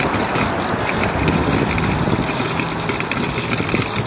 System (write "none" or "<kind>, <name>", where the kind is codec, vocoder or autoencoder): none